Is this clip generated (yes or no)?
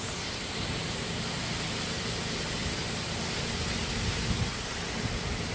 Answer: no